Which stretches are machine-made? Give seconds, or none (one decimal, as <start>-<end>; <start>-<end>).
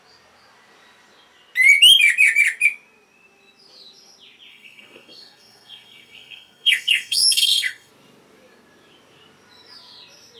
4.5-7.9